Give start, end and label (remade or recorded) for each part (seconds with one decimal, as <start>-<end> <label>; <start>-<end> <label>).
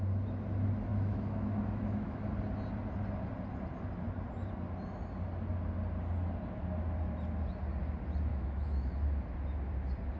0.0-0.9 recorded; 0.9-2.3 remade; 2.3-8.3 recorded; 8.3-8.9 remade; 8.9-10.2 recorded